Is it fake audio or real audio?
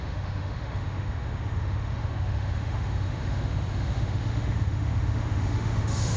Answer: fake